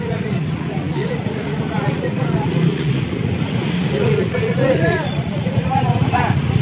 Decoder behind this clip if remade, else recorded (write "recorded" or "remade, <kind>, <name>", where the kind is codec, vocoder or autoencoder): remade, vocoder, Vocos